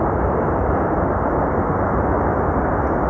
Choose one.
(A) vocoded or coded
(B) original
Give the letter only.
A